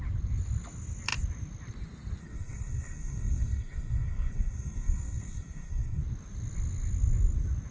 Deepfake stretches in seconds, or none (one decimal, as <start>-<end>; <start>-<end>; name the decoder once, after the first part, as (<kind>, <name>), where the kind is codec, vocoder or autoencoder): 2.2-6.0 (codec, SNAC)